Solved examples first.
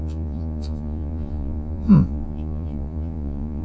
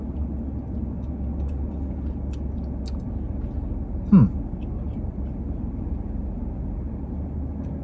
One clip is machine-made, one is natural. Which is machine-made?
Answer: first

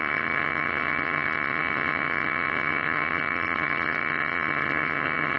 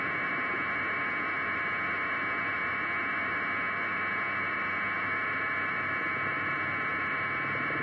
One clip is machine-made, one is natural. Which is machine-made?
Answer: first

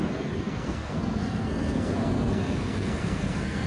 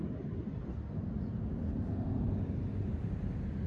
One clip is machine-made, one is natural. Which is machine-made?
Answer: first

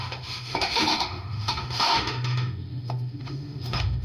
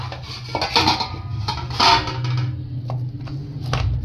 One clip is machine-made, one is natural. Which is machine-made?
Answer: first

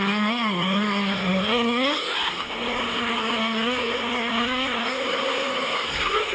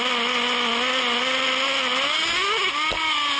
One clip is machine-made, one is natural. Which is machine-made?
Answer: first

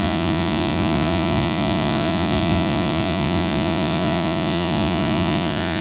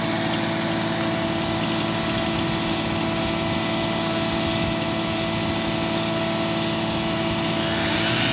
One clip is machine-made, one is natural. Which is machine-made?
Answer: first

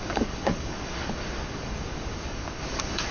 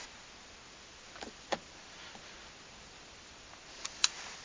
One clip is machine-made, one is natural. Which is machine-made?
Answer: first